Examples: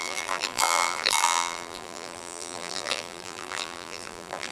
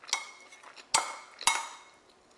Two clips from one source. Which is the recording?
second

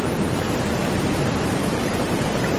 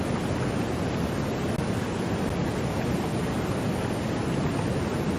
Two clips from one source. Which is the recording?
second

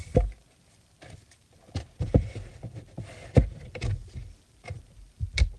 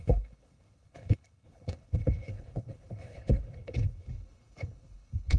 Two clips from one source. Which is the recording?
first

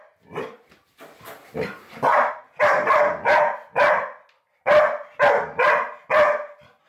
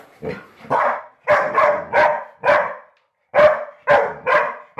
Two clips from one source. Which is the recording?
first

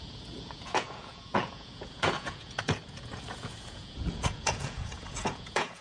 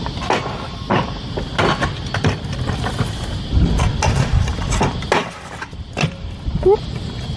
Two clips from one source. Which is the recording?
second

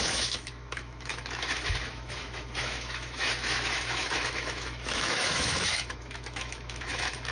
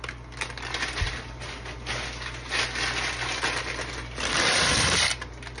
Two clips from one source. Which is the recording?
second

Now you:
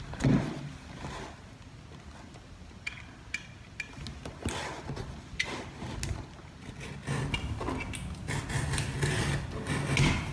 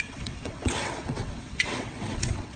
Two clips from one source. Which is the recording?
first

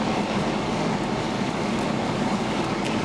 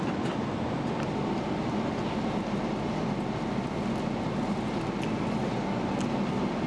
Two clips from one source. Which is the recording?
second